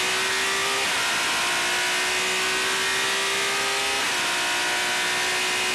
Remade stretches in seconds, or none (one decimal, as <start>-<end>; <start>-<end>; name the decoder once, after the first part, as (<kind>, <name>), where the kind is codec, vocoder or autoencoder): none